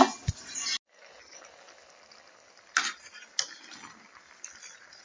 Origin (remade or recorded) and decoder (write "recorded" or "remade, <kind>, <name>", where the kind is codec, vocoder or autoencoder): recorded